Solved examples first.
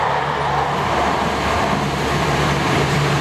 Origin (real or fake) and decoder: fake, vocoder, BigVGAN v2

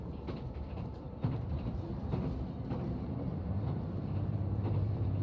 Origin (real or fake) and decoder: fake, vocoder, BigVGAN v2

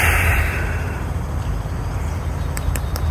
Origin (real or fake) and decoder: fake, vocoder, BigVGAN v2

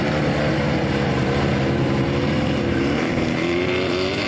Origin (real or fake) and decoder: fake, vocoder, BigVGAN v2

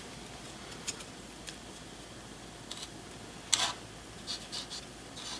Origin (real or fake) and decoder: real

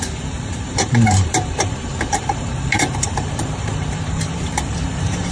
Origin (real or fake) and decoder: fake, vocoder, BigVGAN v2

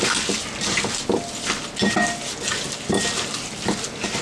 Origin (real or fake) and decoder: real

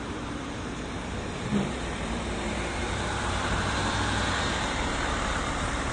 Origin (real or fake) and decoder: fake, vocoder, BigVGAN v2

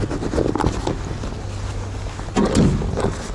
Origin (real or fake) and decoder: real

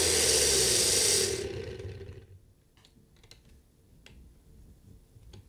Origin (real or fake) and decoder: real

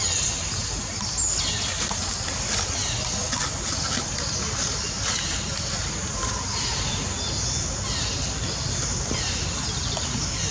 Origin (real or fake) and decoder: real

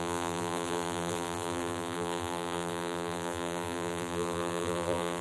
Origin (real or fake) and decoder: fake, vocoder, BigVGAN v2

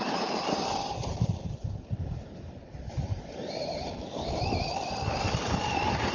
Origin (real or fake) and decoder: real